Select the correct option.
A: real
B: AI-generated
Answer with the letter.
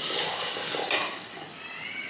A